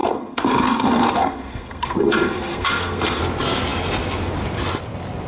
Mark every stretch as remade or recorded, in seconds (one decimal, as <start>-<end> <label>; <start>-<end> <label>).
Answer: 0.0-3.2 remade; 3.2-5.3 recorded